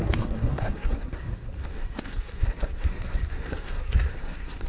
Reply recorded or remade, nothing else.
remade